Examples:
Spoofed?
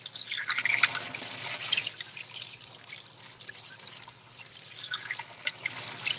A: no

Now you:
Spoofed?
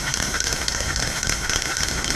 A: yes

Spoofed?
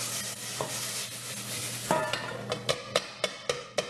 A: no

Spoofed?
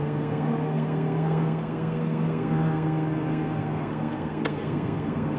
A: yes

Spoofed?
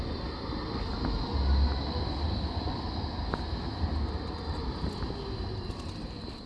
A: no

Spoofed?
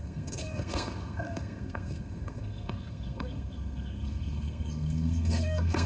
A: yes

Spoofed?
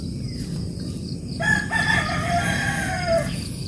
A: no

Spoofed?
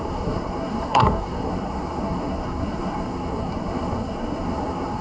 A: yes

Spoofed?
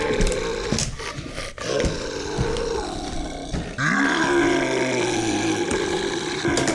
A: no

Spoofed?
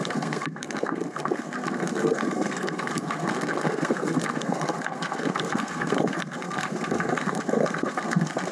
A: yes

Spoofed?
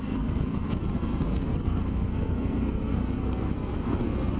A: yes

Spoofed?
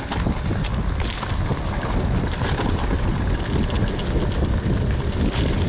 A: no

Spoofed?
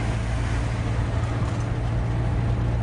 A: no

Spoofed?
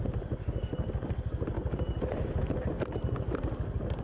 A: no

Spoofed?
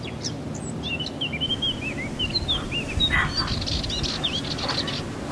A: no